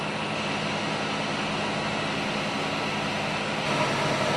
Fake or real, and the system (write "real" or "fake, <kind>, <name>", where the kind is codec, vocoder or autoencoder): real